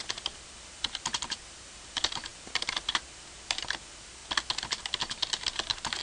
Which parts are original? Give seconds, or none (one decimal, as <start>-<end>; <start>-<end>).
4.2-5.0